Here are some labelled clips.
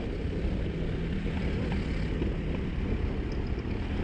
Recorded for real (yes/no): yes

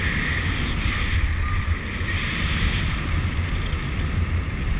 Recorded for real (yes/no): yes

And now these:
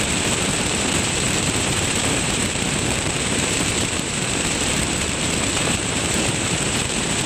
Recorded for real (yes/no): no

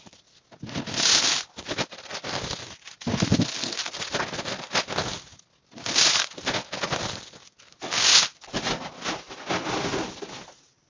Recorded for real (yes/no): yes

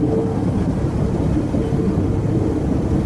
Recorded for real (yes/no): yes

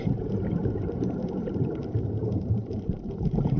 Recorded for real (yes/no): no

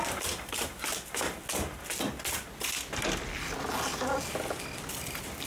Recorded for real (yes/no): yes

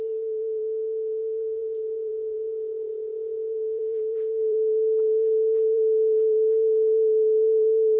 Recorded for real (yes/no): no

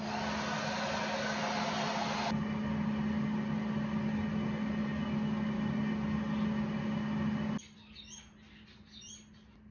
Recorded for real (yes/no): yes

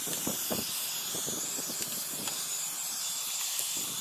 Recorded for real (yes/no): yes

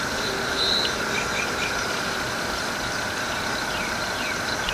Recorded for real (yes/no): no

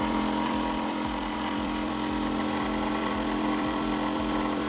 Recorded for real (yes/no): no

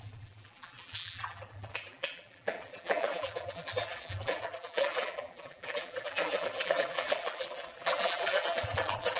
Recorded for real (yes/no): no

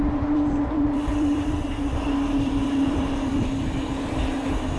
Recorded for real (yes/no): no